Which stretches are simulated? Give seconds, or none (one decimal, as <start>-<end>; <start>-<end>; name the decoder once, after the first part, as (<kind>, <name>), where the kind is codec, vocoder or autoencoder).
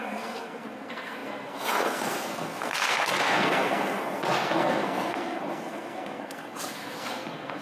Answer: 0.0-7.6 (codec, SNAC)